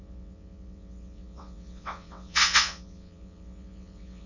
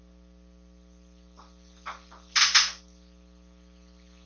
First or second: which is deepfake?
first